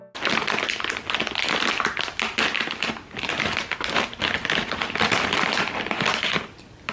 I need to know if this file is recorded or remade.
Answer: recorded